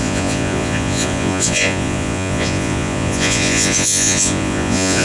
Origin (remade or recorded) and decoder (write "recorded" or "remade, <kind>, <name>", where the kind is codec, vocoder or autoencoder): remade, vocoder, Vocos